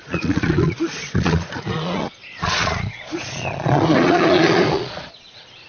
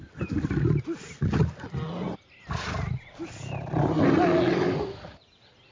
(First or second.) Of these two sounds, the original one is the second